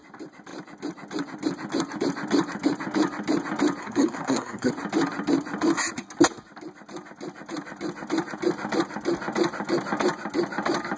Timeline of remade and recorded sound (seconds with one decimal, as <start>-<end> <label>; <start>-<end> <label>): 0.0-3.8 recorded; 3.8-4.7 remade; 4.7-11.0 recorded